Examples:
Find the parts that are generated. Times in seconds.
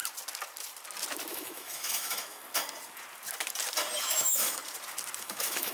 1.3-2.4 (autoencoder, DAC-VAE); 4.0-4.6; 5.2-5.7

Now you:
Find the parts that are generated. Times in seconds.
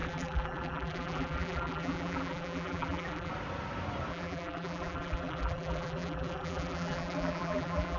0.0-3.3 (vocoder, BigVGAN v2); 4.1-8.0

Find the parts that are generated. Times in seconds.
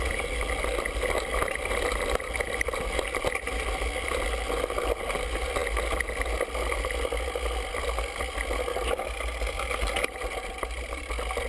none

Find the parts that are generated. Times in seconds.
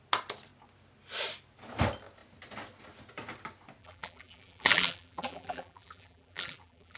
3.8-7.0 (vocoder, BigVGAN v2)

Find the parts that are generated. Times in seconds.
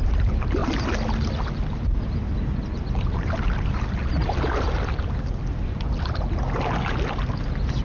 none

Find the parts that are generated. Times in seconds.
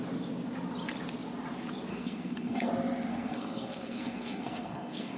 1.9-2.7 (codec, SNAC); 3.1-5.2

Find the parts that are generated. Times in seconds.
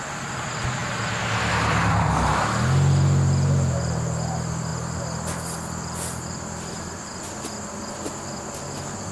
none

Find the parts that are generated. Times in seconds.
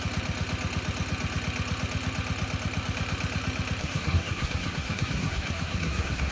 3.8-6.3 (codec, SNAC)